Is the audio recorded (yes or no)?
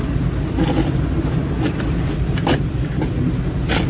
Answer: no